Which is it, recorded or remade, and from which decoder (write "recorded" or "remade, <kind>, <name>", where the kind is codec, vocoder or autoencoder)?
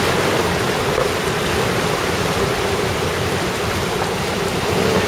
recorded